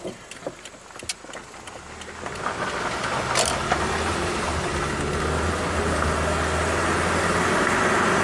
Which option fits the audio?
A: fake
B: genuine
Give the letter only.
B